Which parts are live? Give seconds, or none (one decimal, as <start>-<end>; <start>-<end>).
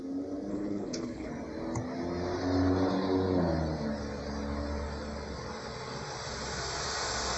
0.0-0.5; 1.3-7.4